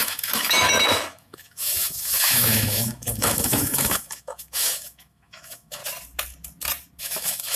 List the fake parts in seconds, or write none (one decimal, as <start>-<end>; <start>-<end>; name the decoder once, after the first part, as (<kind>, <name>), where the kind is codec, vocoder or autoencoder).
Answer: 0.0-5.8 (autoencoder, DAC-VAE); 7.0-7.6